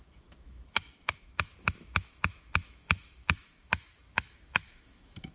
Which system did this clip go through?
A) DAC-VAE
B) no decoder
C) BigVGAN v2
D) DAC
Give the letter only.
A